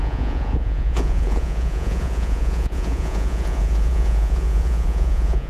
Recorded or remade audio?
remade